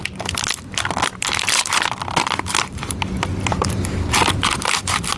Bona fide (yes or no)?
no